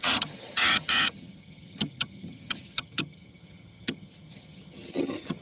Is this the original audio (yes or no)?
no